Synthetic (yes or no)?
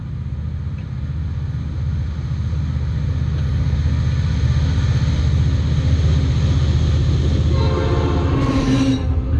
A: no